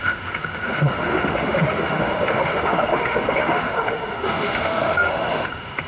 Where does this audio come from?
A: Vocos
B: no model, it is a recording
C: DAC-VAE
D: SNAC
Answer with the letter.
C